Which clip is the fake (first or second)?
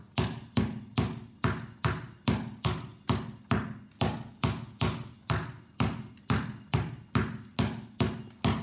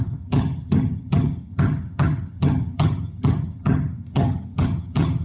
second